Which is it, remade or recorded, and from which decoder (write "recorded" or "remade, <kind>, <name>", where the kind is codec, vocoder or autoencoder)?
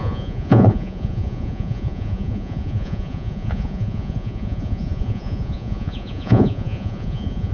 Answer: remade, vocoder, Vocos